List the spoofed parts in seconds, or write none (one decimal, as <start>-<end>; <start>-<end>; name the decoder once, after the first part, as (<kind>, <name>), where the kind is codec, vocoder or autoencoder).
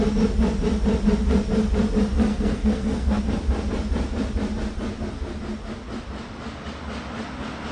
2.3-3.2 (codec, SNAC)